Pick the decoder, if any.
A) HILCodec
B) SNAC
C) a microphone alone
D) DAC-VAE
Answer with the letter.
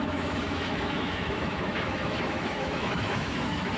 D